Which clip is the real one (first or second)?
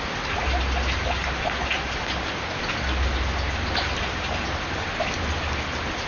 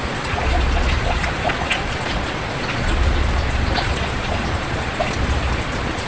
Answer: first